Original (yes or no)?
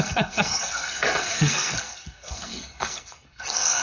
no